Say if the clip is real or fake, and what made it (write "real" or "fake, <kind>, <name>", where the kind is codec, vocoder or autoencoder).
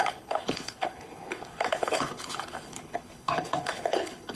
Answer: fake, codec, HILCodec